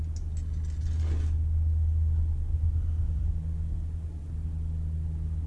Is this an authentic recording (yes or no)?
yes